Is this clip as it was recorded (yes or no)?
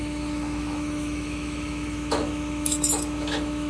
no